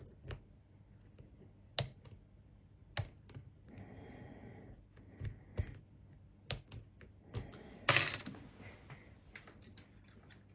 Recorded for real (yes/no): yes